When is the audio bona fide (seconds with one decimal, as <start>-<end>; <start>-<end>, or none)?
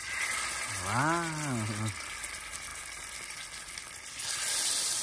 0.0-5.0